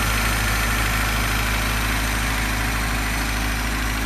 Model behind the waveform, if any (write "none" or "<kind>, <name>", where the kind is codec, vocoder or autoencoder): none